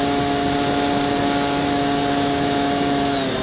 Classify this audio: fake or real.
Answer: real